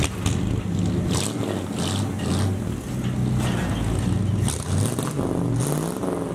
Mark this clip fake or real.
real